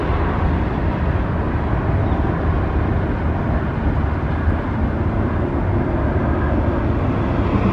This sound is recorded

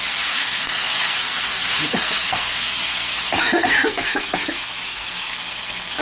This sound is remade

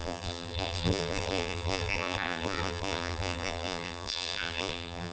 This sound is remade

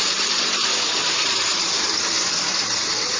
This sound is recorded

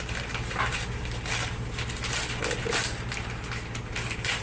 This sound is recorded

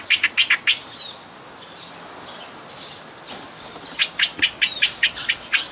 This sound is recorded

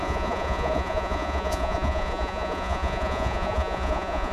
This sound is remade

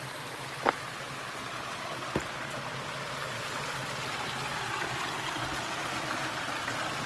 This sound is recorded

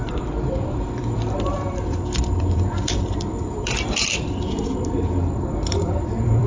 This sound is remade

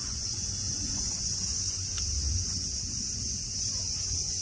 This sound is remade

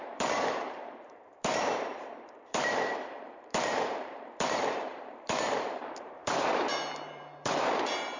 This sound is remade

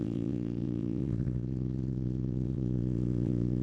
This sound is remade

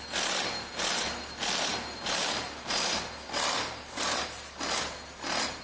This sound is recorded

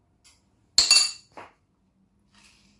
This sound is recorded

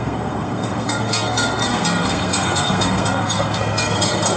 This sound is remade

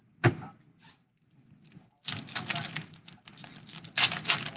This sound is recorded